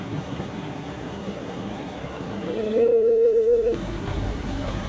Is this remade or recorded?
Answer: remade